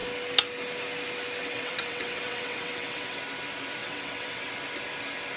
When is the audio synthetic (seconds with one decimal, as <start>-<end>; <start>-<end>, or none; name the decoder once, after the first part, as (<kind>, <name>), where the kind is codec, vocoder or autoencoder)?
1.4-3.2 (vocoder, WaveNeXt); 3.8-4.5